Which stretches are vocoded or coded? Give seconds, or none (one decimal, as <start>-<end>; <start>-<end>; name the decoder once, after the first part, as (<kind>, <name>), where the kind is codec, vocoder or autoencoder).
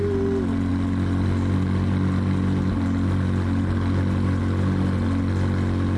none